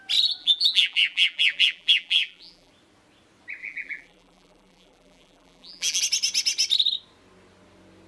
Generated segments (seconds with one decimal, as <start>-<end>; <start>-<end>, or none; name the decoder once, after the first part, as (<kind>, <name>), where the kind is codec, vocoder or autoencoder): 0.4-2.7 (vocoder, BigVGAN v2); 3.6-6.0